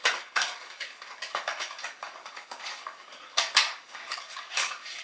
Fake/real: fake